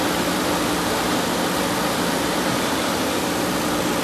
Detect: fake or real real